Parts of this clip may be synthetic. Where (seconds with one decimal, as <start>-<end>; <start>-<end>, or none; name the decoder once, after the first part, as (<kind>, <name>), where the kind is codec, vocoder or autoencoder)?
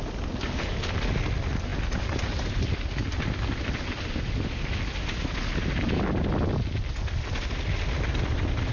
none